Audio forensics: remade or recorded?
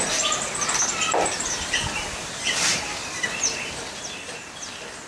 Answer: recorded